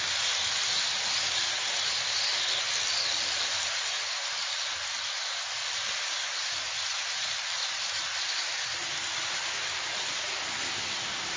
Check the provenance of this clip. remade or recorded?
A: recorded